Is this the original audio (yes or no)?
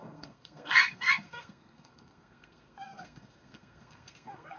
no